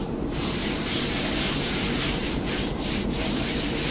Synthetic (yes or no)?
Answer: yes